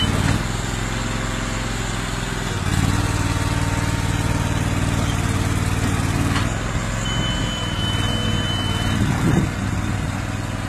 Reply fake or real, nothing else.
real